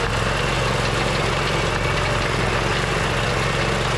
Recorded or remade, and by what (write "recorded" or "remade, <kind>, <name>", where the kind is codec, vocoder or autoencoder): recorded